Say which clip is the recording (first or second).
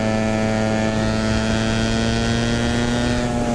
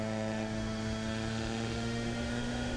first